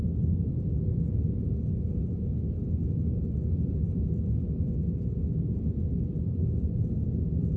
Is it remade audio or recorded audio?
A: recorded